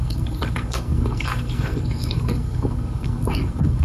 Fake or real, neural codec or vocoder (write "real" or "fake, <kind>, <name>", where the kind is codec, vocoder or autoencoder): fake, codec, SNAC